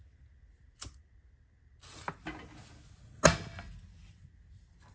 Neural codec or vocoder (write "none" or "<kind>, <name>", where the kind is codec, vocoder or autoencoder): none